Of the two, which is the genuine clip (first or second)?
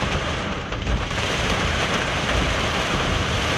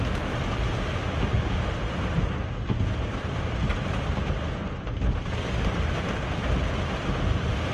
second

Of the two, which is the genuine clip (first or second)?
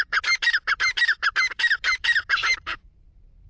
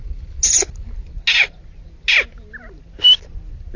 second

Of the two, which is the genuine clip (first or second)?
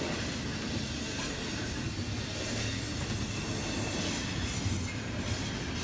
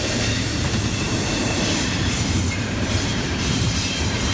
first